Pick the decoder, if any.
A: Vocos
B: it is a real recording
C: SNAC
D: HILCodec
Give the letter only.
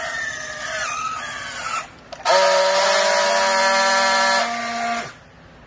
B